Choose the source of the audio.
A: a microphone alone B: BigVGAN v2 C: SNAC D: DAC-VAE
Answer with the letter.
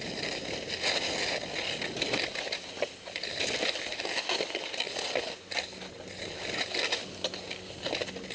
A